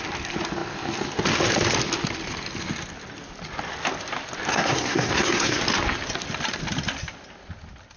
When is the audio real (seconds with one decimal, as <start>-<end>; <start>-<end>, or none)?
0.0-4.5; 5.6-8.0